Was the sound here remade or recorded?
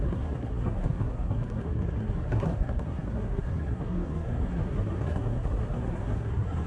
remade